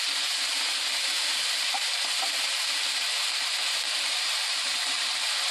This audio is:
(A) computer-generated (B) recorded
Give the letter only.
A